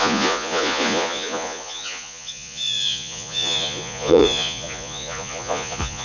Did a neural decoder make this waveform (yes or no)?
yes